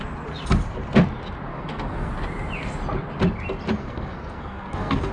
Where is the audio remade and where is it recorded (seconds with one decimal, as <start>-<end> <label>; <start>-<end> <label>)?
0.0-1.5 recorded; 1.5-2.1 remade; 2.1-3.8 recorded; 3.8-5.1 remade